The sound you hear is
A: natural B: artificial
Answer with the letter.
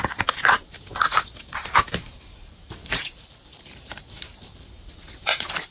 B